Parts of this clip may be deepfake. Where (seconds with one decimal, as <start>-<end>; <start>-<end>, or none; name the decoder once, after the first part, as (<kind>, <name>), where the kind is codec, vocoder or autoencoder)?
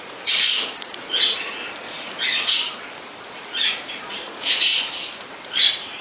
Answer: 0.0-1.6 (vocoder, Vocos); 2.2-2.6; 3.7-6.0